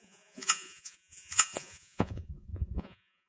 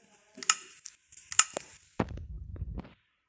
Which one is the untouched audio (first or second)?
second